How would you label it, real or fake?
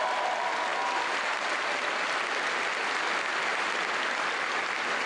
real